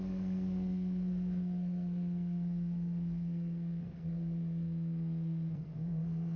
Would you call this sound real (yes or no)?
no